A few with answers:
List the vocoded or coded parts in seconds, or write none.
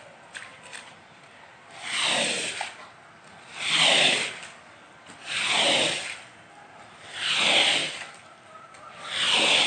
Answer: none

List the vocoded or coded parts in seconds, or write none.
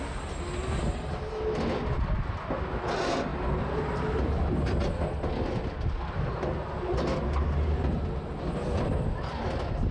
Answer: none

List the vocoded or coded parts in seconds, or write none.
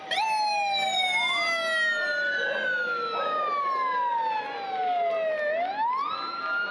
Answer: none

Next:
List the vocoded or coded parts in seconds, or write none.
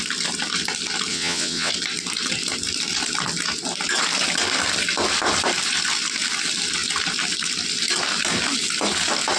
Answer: 1.1-1.7 (vocoder, WaveNeXt)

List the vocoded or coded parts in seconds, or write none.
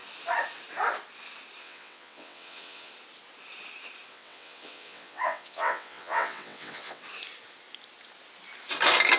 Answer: 1.6-2.9 (vocoder, WaveNeXt); 4.1-7.0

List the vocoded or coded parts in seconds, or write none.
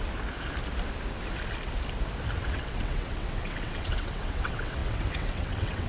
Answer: 2.4-5.9 (vocoder, WaveNeXt)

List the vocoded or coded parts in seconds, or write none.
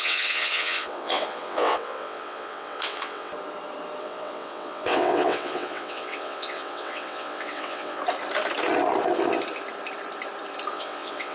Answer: 0.0-3.3 (vocoder, WaveNeXt); 4.0-8.0; 10.7-11.3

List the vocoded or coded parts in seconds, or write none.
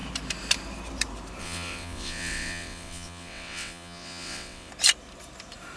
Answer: 1.4-4.7 (vocoder, WaveNeXt)